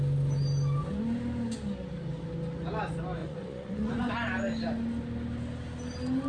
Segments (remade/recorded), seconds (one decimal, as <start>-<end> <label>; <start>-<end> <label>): 0.0-3.2 recorded; 3.2-4.1 remade; 4.1-6.3 recorded